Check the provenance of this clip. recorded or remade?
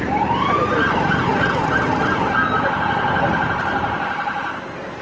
remade